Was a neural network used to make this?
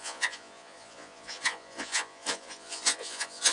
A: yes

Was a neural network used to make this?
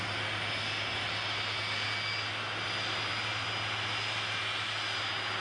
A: no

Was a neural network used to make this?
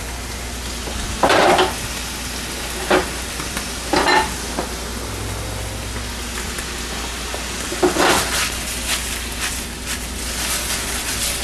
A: no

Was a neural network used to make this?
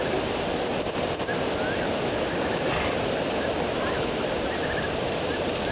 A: no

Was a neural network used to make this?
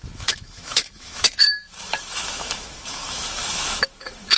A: yes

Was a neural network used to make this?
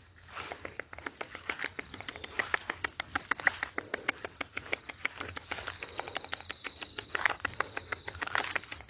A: no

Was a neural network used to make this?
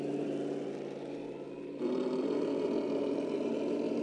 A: no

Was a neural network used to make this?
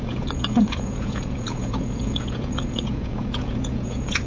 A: yes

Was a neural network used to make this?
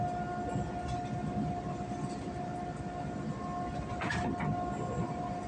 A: no